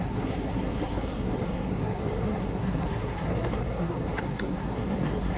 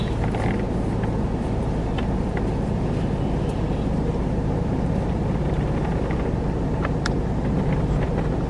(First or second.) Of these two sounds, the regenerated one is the first